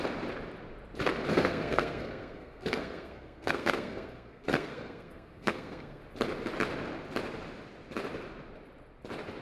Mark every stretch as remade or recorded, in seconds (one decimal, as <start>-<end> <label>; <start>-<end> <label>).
0.0-1.3 recorded; 1.3-6.0 remade; 6.0-9.4 recorded